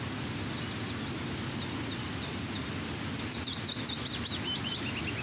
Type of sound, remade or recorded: recorded